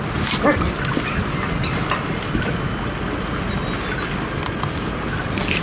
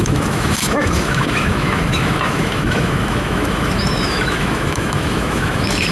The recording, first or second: first